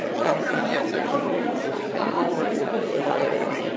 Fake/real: fake